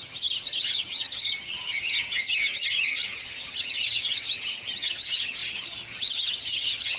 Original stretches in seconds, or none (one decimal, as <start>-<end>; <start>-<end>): none

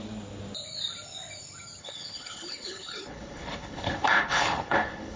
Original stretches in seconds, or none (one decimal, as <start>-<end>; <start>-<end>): 0.0-1.8

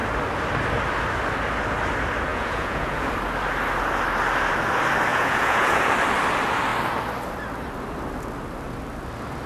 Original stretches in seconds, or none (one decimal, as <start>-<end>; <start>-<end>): 0.0-2.3; 3.1-5.1; 5.8-9.5

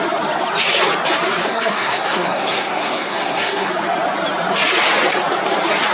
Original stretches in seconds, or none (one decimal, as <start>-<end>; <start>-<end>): 0.0-1.4; 3.7-5.9

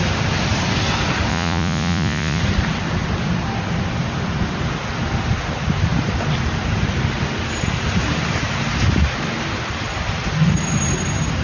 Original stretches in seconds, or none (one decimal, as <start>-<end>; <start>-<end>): 0.0-1.3; 2.4-11.4

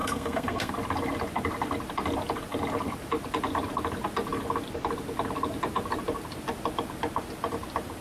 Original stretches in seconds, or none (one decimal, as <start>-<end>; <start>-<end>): 0.7-8.0

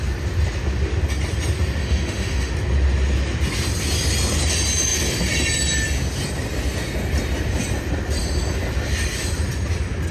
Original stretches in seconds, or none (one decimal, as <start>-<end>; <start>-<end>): 0.0-1.8; 2.5-10.1

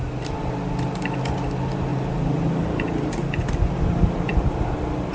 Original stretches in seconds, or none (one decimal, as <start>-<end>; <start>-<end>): 0.0-5.1